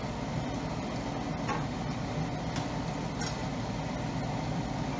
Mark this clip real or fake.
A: real